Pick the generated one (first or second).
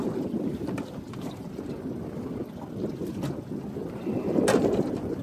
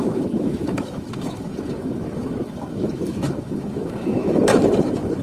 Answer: second